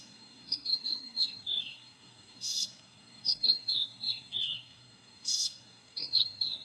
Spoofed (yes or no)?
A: yes